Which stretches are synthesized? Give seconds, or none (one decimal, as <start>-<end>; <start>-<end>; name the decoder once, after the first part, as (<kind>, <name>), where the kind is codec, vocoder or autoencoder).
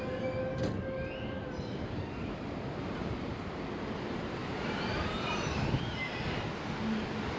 4.4-5.8 (vocoder, BigVGAN v2)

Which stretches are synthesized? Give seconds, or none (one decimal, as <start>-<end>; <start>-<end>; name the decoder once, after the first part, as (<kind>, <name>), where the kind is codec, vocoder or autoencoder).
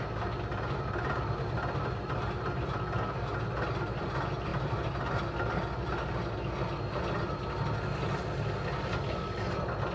4.5-5.2 (vocoder, BigVGAN v2)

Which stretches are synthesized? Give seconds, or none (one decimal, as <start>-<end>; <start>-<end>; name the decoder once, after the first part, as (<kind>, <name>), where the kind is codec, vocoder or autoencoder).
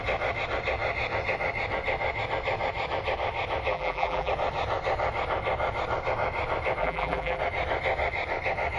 3.7-4.3 (vocoder, BigVGAN v2); 6.8-7.4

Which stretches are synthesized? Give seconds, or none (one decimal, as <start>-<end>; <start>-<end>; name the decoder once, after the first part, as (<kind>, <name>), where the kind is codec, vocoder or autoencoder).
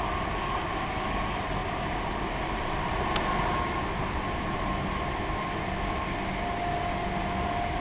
none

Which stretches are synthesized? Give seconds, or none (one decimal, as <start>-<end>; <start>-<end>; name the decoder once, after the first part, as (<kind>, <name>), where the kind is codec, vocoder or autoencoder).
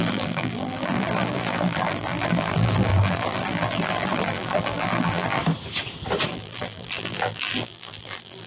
0.0-5.4 (vocoder, BigVGAN v2); 6.3-8.5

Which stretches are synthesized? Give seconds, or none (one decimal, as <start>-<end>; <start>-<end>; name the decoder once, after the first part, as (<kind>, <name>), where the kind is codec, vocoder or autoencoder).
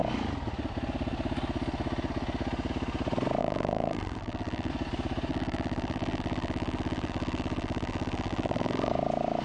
3.4-4.7 (vocoder, BigVGAN v2); 5.3-8.9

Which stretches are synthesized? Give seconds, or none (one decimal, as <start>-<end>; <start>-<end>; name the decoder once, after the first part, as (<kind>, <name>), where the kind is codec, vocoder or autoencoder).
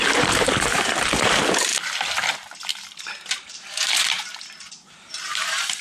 0.0-1.7 (vocoder, BigVGAN v2); 3.3-5.8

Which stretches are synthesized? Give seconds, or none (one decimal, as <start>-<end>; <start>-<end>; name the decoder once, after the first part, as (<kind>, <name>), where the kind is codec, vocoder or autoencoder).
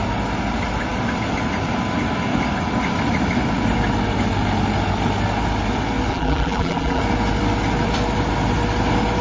6.1-7.0 (vocoder, BigVGAN v2)